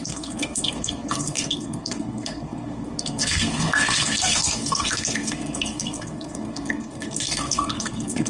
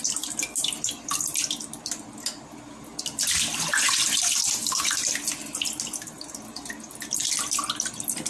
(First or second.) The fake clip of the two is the first